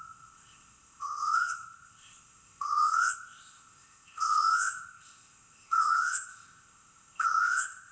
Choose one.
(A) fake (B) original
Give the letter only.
A